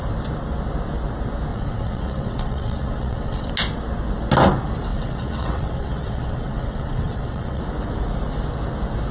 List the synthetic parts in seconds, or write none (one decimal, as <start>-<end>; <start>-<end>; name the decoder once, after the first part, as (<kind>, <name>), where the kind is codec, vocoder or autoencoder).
1.5-3.5 (vocoder, WaveNeXt); 4.9-7.6